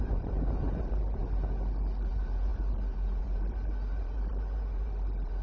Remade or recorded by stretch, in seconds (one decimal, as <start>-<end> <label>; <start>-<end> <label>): 0.0-1.2 remade; 1.2-2.1 recorded; 2.1-5.4 remade